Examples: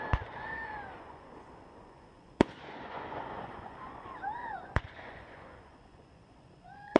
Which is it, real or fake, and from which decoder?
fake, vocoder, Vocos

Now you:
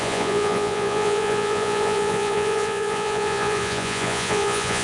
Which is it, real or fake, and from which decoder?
fake, vocoder, Vocos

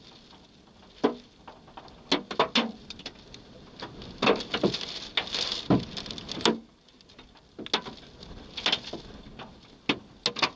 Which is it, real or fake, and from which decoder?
real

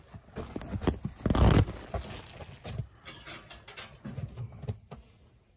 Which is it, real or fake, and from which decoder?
real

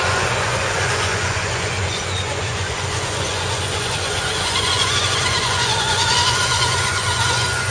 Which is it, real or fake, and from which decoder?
fake, vocoder, Vocos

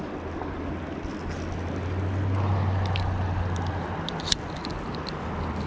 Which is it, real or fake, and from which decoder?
real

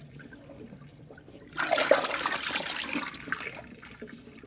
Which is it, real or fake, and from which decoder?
real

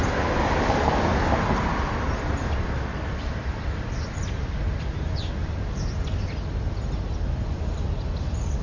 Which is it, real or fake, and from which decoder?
real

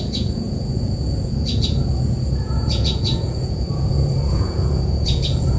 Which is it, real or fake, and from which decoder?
fake, vocoder, Vocos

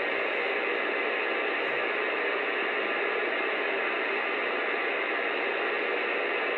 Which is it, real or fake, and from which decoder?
real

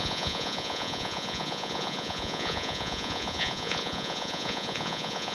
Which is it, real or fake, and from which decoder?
fake, vocoder, Vocos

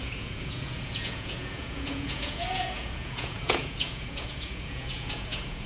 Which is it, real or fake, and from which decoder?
fake, vocoder, Vocos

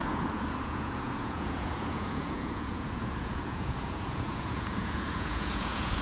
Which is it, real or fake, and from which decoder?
fake, vocoder, Vocos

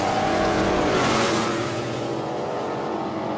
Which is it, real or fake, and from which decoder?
fake, vocoder, Vocos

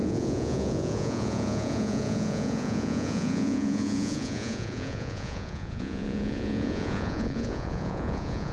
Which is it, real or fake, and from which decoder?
fake, vocoder, Vocos